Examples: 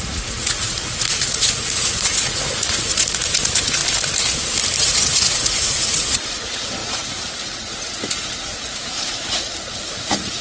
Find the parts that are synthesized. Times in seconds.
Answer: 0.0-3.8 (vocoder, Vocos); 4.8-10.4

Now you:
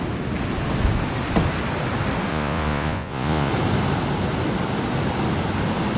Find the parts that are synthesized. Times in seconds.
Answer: 2.3-3.5 (vocoder, Vocos)

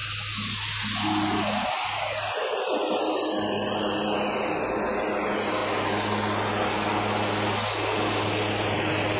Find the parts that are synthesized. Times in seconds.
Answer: none

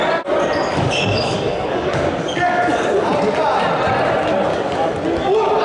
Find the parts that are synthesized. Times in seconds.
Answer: 0.7-3.1 (codec, DAC); 4.5-5.0

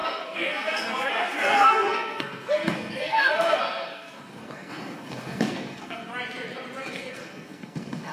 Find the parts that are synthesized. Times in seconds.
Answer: 0.0-6.1 (codec, SNAC); 6.8-8.1

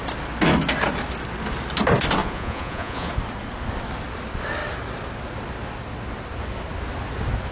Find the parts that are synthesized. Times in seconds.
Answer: 2.2-3.1 (vocoder, Vocos)

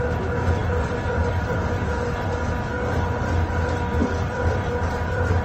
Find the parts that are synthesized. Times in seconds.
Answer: 0.6-2.3 (vocoder, BigVGAN v2); 4.0-5.4

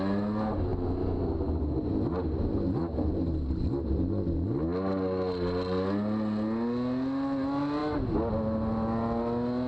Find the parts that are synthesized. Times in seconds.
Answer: none